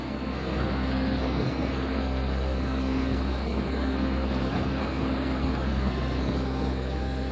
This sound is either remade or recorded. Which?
remade